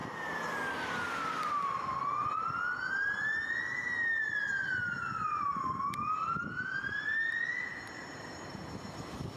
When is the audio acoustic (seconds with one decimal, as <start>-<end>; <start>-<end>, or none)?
0.0-9.4

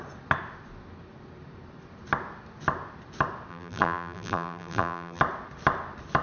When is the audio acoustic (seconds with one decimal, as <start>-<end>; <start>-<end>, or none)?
0.0-3.5; 5.2-6.2

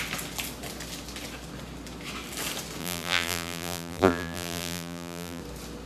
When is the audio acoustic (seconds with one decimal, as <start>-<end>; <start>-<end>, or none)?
0.0-2.8; 5.4-5.9

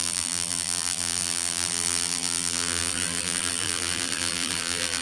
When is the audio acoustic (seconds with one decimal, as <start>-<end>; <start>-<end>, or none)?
none